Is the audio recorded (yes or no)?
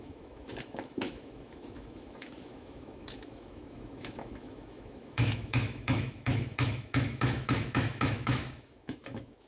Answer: no